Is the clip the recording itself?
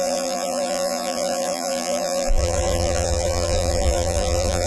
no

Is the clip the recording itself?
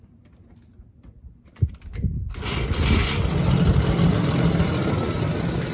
yes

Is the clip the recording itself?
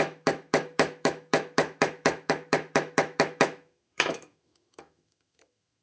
no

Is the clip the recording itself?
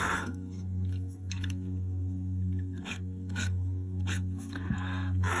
no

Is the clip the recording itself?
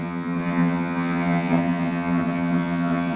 no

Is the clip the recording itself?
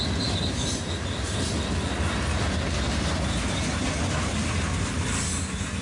yes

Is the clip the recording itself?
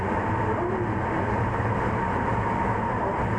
yes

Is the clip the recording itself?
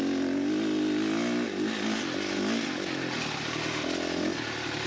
yes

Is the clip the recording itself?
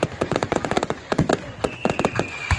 no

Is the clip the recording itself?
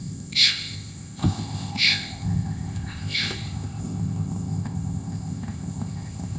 no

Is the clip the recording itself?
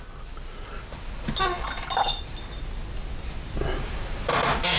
yes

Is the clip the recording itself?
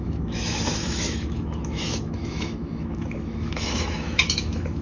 no